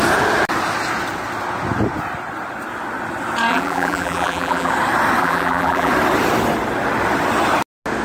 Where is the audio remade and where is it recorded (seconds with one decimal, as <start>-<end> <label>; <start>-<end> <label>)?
0.0-3.5 recorded; 3.5-4.7 remade; 4.7-5.2 recorded; 5.2-5.9 remade; 5.9-8.0 recorded